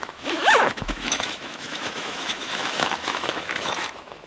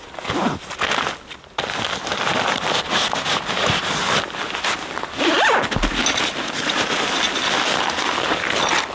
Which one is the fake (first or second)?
first